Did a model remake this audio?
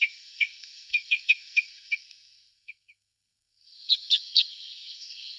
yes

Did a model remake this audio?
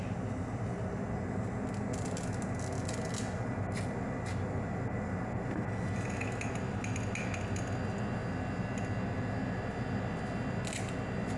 no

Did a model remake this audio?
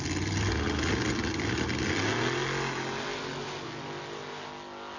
no